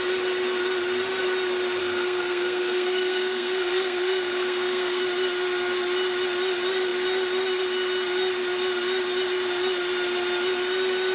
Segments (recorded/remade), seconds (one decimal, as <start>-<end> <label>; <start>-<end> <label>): 0.0-1.8 recorded; 1.8-5.0 remade; 5.0-11.1 recorded